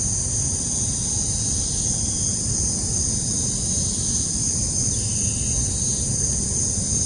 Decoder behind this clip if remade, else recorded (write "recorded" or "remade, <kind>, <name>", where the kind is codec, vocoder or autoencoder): recorded